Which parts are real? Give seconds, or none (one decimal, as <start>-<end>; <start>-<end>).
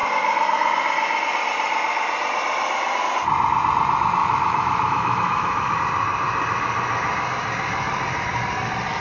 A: 0.0-4.2; 5.8-9.0